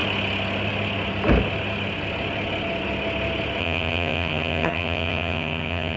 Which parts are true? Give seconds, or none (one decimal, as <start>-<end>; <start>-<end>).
0.0-3.6